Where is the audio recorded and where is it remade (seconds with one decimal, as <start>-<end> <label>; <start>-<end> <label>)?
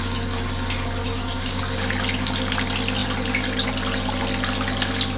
0.0-1.0 recorded; 1.0-1.6 remade; 1.6-5.2 recorded